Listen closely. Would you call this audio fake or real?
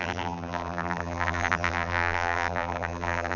fake